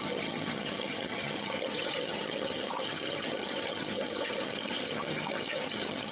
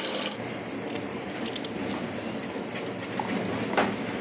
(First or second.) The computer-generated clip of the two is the first